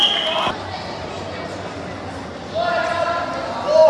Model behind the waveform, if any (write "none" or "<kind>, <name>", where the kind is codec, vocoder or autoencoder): none